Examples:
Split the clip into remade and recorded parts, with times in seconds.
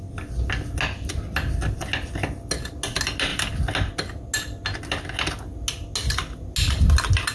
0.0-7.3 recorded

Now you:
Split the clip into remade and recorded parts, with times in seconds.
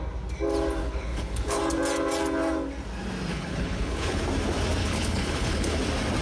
0.0-0.8 recorded; 0.8-1.6 remade; 1.6-3.3 recorded; 3.3-4.2 remade; 4.2-4.8 recorded; 4.8-5.8 remade; 5.8-6.2 recorded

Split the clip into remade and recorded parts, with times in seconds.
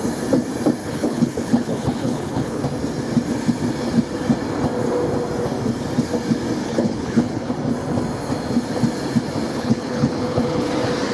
0.0-0.8 recorded; 0.8-2.6 remade; 2.6-6.6 recorded; 6.6-7.5 remade; 7.5-9.5 recorded; 9.5-10.7 remade; 10.7-11.1 recorded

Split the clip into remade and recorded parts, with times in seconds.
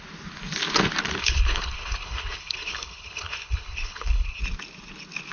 0.0-1.2 recorded; 1.2-4.4 remade; 4.4-5.3 recorded